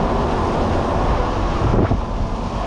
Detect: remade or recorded recorded